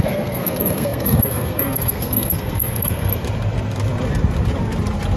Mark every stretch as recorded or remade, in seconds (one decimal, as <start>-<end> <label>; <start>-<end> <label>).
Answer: 0.0-3.1 remade; 3.1-5.2 recorded